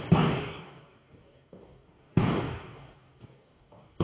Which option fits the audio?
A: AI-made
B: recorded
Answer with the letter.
A